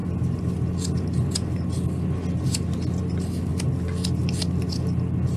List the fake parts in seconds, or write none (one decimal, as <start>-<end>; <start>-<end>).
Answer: none